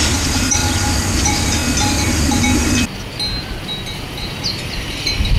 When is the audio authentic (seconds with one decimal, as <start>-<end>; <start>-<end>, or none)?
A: 0.6-1.2; 1.6-4.8